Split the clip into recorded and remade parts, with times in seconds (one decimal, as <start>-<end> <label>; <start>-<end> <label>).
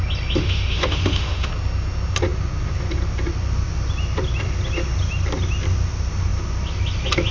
0.0-0.4 recorded; 0.4-1.5 remade; 1.5-7.3 recorded